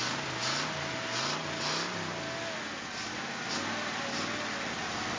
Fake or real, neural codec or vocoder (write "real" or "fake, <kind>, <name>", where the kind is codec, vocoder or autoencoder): real